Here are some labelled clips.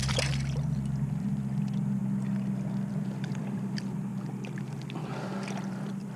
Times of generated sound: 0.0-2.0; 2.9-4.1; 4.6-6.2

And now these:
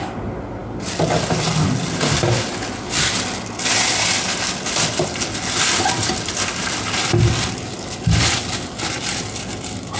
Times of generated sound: none